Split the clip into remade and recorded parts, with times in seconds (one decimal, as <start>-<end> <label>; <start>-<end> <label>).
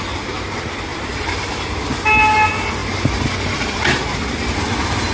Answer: 0.0-0.9 recorded; 0.9-1.8 remade; 1.8-5.1 recorded